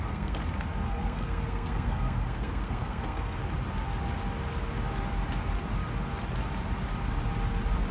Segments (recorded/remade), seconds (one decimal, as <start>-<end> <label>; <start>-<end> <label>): 0.0-0.4 remade; 0.4-0.9 recorded; 0.9-3.4 remade; 3.4-7.9 recorded